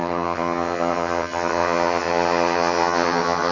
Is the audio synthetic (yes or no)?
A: yes